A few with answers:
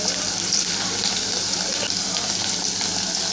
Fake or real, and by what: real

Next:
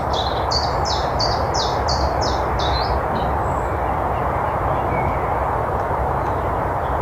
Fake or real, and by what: real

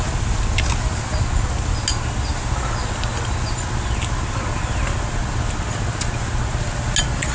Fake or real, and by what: real